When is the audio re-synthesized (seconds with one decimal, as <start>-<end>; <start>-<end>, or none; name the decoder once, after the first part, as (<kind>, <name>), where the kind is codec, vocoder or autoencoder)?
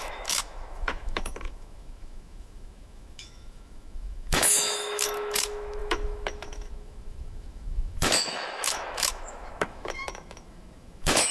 0.0-11.3 (autoencoder, DAC-VAE)